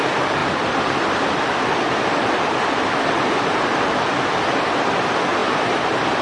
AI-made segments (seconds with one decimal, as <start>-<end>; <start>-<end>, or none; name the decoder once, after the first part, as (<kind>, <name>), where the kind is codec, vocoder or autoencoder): 0.4-1.2 (vocoder, BigVGAN v2); 5.4-6.2